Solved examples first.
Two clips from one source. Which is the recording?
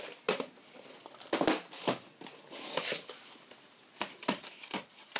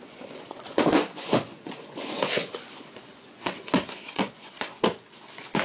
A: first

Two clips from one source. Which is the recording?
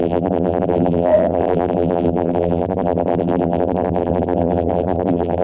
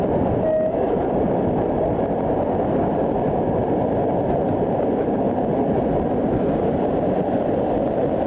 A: second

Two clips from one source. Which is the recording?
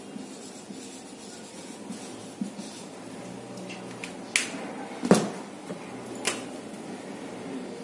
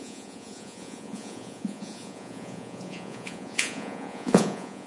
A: first